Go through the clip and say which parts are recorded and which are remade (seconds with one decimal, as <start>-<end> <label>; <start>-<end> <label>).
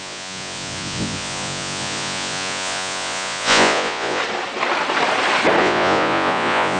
0.0-4.2 remade; 4.2-5.6 recorded; 5.6-6.8 remade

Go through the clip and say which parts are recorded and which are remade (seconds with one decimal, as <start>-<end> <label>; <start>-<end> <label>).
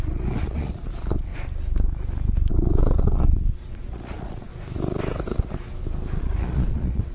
0.0-1.3 remade; 1.3-2.5 recorded; 2.5-4.5 remade; 4.5-6.2 recorded; 6.2-7.1 remade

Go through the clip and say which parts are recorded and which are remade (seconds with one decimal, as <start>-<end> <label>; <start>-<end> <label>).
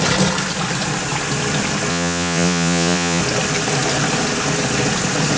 0.0-1.9 recorded; 1.9-3.2 remade; 3.2-5.4 recorded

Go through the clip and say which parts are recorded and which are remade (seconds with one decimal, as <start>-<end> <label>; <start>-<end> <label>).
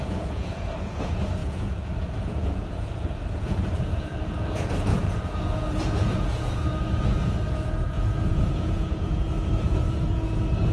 0.0-10.7 remade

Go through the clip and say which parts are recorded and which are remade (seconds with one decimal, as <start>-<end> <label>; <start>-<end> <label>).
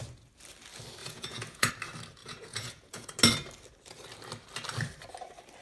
0.0-1.0 recorded; 1.0-1.7 remade; 1.7-2.2 recorded; 2.2-3.1 remade; 3.1-5.6 recorded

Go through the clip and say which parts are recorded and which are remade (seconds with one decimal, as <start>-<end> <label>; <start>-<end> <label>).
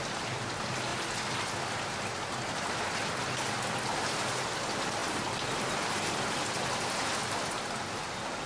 0.0-8.5 recorded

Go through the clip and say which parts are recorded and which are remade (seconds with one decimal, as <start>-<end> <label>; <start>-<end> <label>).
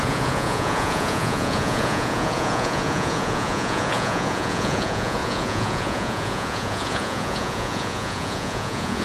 0.0-9.0 remade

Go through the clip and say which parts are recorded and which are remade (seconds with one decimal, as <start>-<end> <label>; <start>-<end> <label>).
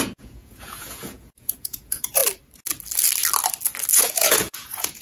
0.0-2.2 remade; 2.2-4.0 recorded; 4.0-5.0 remade